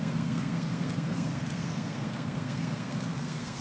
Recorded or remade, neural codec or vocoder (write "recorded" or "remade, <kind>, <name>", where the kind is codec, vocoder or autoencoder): remade, codec, SNAC